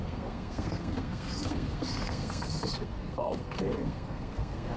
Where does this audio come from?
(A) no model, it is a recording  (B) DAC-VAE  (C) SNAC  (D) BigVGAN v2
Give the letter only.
C